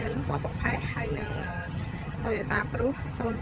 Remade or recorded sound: remade